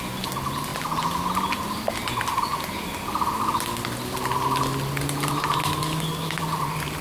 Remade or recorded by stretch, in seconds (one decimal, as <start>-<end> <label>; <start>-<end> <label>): 0.0-5.8 recorded; 5.8-6.4 remade; 6.4-7.0 recorded